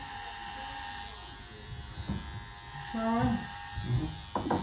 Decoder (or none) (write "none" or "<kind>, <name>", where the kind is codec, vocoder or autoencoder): none